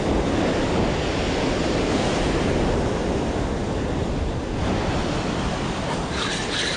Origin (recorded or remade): recorded